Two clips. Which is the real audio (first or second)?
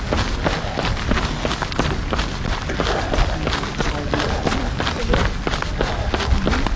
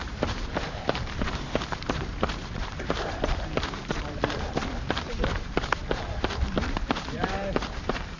first